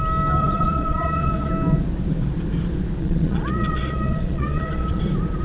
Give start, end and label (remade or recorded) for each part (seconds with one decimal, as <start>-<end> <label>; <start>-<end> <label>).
0.0-0.4 recorded; 0.4-1.5 remade; 1.5-3.0 recorded; 3.0-5.0 remade; 5.0-5.4 recorded

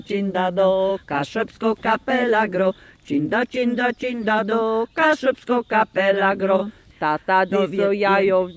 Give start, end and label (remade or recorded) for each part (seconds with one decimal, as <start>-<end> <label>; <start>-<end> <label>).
0.0-0.9 recorded; 0.9-2.7 remade; 2.7-6.6 recorded; 6.6-8.6 remade

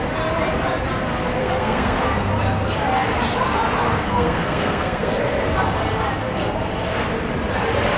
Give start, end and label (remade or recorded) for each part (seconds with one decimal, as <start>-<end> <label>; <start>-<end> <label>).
0.0-1.4 recorded; 1.4-2.3 remade; 2.3-3.9 recorded; 3.9-5.2 remade; 5.2-8.0 recorded

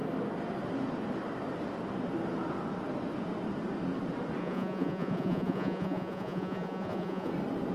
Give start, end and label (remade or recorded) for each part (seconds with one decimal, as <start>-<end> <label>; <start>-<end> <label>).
0.0-4.4 recorded; 4.4-7.3 remade; 7.3-7.7 recorded

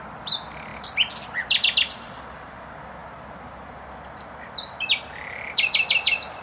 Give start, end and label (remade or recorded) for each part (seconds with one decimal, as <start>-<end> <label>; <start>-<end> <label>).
0.0-6.4 recorded

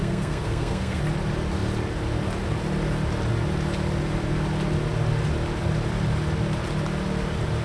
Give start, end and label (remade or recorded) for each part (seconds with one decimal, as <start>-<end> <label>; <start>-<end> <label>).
0.0-1.0 remade; 1.0-7.6 recorded

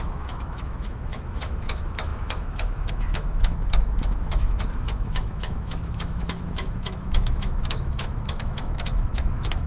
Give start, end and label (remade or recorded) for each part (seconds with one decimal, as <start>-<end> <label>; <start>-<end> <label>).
0.0-9.7 remade